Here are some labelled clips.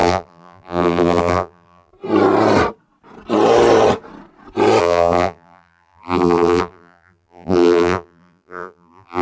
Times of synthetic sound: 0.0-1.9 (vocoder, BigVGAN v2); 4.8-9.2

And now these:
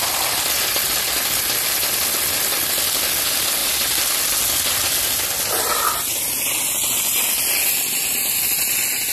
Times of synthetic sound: none

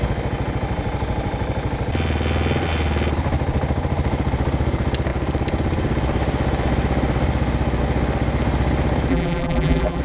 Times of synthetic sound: 9.1-10.0 (vocoder, BigVGAN v2)

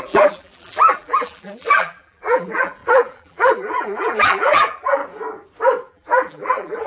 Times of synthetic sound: 0.0-5.0 (vocoder, BigVGAN v2); 5.9-6.9

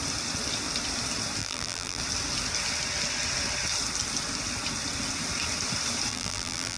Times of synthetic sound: 1.4-2.0 (vocoder, BigVGAN v2); 6.1-6.8

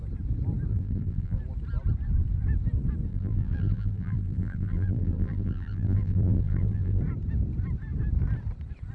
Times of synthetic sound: 0.7-1.4 (vocoder, BigVGAN v2); 3.1-7.0

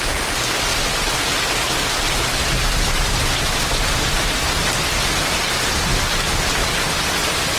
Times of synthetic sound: 0.0-4.4 (vocoder, BigVGAN v2); 5.7-6.6